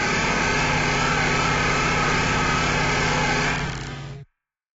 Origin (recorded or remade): recorded